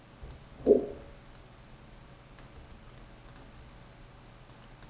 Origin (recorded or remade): recorded